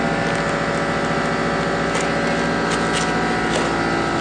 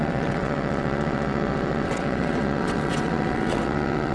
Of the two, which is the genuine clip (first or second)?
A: first